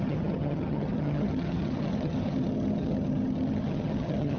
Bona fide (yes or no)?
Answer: no